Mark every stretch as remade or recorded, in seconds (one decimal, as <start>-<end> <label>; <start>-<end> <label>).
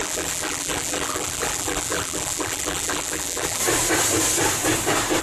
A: 0.0-3.6 remade; 3.6-5.2 recorded